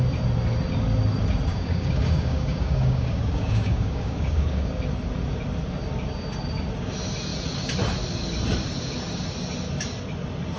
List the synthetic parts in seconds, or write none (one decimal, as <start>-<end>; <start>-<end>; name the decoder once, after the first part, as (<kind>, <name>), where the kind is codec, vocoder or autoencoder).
1.5-4.7 (codec, DAC)